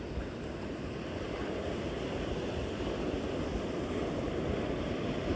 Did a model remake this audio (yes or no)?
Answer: no